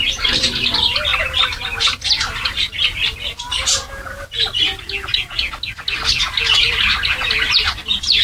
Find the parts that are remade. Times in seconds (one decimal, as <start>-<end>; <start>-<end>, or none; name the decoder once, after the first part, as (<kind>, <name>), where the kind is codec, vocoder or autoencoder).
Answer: none